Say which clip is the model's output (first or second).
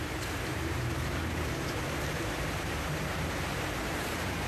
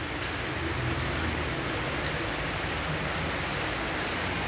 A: first